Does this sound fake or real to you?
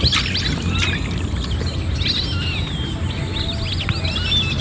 real